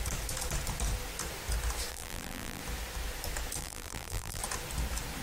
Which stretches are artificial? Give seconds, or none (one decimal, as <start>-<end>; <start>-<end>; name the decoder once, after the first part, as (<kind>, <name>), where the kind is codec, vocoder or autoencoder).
1.9-2.6 (vocoder, BigVGAN v2); 3.6-4.4